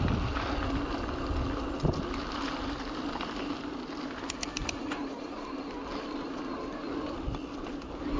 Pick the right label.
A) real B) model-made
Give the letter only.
A